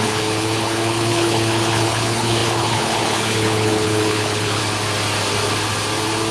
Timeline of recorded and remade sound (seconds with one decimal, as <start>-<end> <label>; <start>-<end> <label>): 0.0-4.6 remade; 4.6-6.3 recorded

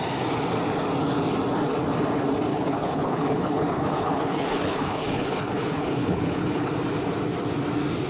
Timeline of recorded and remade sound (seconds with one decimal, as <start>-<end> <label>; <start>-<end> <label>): 0.0-2.5 recorded; 2.5-6.7 remade; 6.7-8.1 recorded

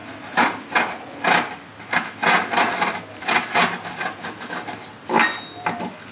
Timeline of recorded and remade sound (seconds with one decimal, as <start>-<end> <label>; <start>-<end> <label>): 0.0-6.1 recorded

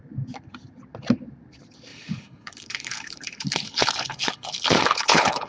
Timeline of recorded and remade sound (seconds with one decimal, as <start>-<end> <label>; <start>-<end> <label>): 0.0-1.9 recorded; 1.9-5.5 remade

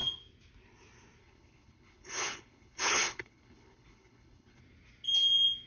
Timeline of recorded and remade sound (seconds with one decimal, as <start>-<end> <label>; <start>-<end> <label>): 0.0-1.2 recorded; 1.2-4.6 remade; 4.6-5.7 recorded

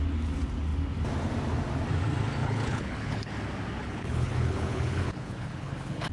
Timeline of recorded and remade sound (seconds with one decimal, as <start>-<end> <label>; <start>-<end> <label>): 0.0-2.4 recorded; 2.4-3.3 remade; 3.3-3.8 recorded; 3.8-6.1 remade